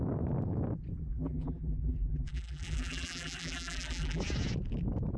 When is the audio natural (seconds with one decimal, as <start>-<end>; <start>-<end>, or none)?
0.0-1.1; 4.2-5.2